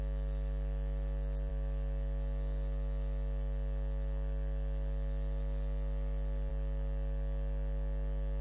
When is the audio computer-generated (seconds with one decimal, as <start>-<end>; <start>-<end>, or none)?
none